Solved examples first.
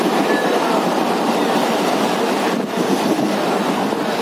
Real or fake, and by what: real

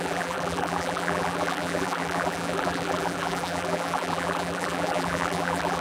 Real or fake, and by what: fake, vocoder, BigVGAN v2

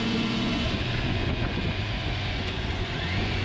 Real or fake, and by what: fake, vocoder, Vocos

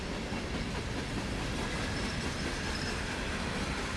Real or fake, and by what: real